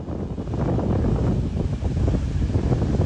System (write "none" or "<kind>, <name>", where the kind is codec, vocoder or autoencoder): none